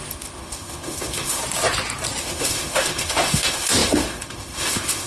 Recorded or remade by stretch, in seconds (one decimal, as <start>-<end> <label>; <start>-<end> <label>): 0.0-1.4 remade; 1.4-2.2 recorded; 2.2-5.1 remade